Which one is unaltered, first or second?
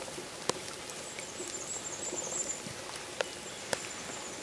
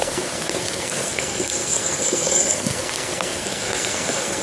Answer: first